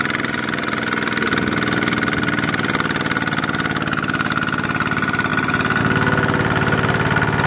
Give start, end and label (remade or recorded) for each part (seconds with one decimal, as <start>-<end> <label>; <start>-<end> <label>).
0.0-7.5 recorded